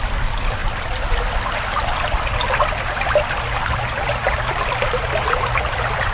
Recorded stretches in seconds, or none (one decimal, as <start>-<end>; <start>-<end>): 0.6-2.6